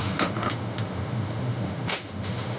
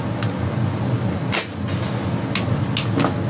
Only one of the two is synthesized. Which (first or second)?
first